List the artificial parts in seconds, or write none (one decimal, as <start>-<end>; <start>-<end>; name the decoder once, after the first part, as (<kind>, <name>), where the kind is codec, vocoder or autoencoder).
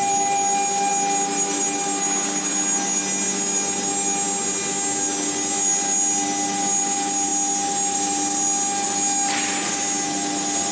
none